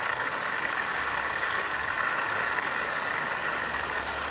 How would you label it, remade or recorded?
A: remade